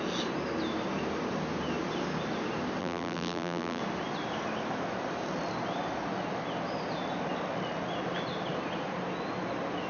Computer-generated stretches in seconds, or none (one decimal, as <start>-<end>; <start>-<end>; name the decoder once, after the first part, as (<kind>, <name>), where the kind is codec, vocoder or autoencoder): 2.8-3.8 (vocoder, BigVGAN v2)